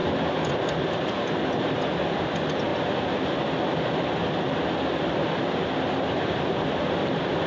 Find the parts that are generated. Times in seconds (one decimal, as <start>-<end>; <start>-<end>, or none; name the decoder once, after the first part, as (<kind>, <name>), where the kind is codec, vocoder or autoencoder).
none